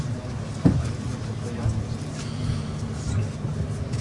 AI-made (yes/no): no